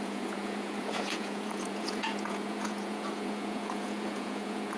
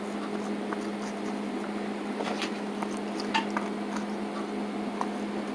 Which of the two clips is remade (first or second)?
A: first